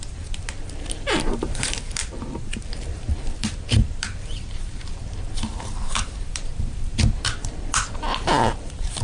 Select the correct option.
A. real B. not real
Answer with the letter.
B